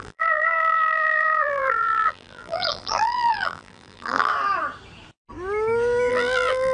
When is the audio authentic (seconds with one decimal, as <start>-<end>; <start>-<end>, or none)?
4.3-6.1